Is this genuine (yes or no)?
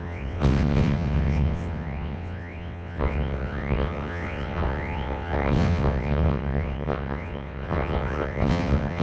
no